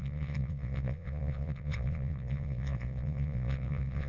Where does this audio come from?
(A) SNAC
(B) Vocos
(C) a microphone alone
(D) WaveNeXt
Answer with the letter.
B